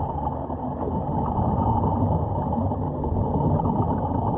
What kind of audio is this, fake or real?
real